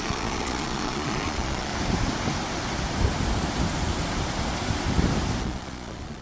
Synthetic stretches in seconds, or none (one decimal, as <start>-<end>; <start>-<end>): 0.0-1.7; 5.4-6.2